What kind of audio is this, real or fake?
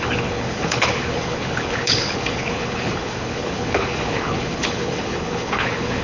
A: fake